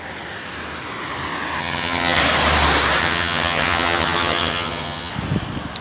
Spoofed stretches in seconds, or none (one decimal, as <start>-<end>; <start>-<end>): 1.6-2.2; 3.0-5.1